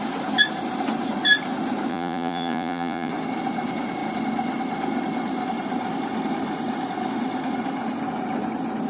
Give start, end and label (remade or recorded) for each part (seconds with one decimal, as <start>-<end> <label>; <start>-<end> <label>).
0.0-1.9 recorded; 1.9-3.1 remade; 3.1-8.9 recorded